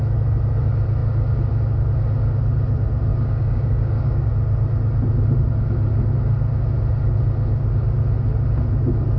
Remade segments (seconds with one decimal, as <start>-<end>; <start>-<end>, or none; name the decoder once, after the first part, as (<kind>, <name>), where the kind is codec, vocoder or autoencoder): 3.1-4.3 (codec, DAC)